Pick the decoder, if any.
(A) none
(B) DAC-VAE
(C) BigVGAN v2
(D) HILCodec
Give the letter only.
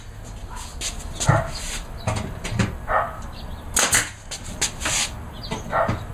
A